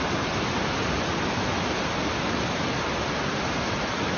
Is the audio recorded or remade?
recorded